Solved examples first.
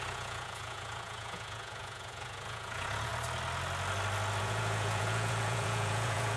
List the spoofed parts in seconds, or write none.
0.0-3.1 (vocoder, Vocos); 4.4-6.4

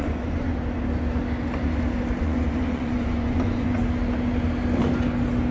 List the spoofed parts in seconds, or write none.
0.0-0.5 (vocoder, Vocos); 2.2-3.8

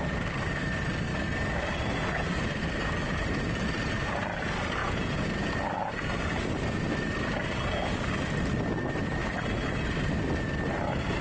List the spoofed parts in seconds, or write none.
4.8-5.5 (vocoder, Vocos)

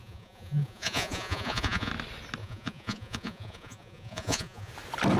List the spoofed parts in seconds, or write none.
0.0-1.9 (vocoder, Vocos); 2.4-4.7

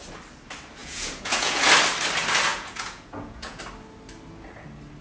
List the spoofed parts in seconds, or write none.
0.8-1.7 (vocoder, Vocos); 2.5-3.6

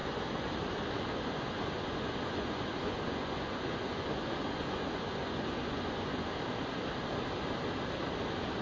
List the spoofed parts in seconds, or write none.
0.0-0.5 (vocoder, Vocos); 1.1-6.3

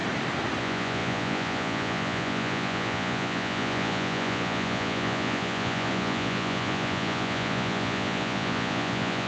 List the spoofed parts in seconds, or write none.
0.6-9.3 (vocoder, Vocos)

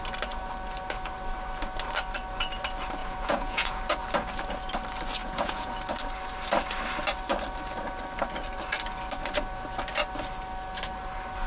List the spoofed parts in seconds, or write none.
3.0-3.8 (vocoder, Vocos); 5.2-5.7